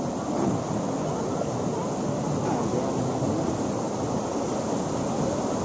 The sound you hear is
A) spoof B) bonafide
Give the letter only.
B